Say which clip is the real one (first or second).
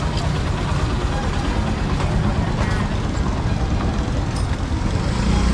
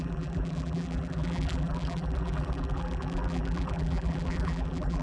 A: first